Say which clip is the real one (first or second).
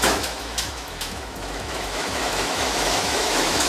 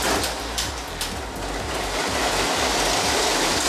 second